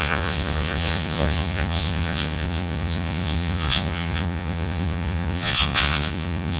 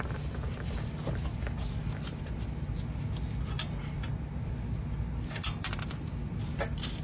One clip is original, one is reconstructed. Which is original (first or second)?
second